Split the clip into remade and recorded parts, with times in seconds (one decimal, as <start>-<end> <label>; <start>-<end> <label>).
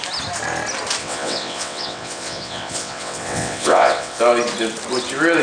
0.0-1.0 recorded; 1.0-4.2 remade; 4.2-5.4 recorded